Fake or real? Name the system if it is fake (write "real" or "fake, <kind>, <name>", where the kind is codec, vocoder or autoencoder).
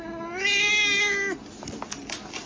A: real